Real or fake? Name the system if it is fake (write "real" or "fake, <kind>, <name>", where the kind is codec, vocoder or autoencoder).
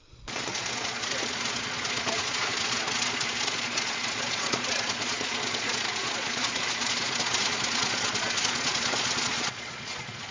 fake, vocoder, Vocos